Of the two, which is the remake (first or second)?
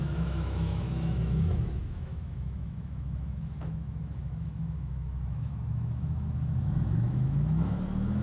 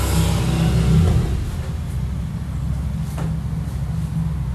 first